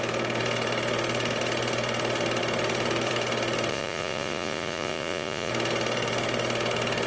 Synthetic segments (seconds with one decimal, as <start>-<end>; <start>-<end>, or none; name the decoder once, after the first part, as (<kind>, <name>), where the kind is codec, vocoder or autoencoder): 3.7-5.5 (vocoder, Vocos)